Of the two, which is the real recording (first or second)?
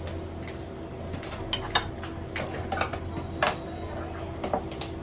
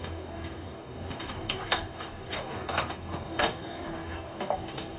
first